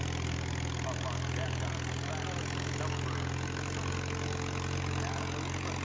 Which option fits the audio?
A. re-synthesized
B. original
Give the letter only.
B